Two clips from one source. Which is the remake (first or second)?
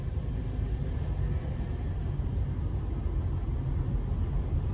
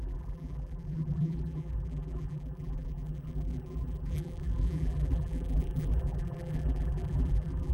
second